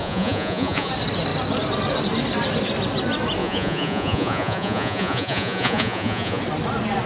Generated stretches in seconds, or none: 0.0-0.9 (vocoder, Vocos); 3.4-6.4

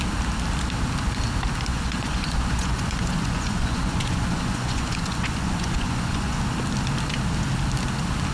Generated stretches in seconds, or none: 1.7-6.4 (vocoder, Vocos)

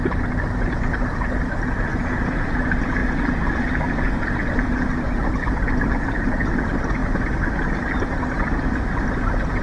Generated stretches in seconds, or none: 1.9-2.5 (vocoder, Vocos)

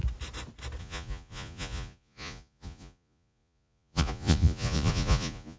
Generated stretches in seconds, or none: 0.8-5.6 (vocoder, Vocos)

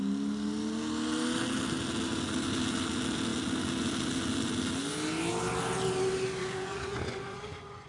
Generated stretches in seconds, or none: 6.4-7.9 (vocoder, Vocos)

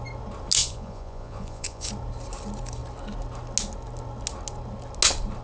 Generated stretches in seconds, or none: 0.6-1.9 (vocoder, Vocos)